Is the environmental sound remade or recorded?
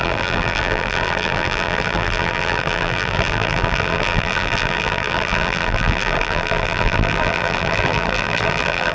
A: remade